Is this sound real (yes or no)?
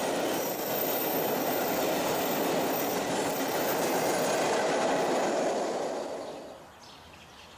yes